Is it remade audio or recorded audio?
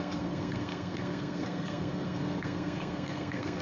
remade